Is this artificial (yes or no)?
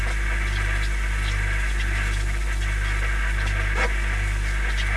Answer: no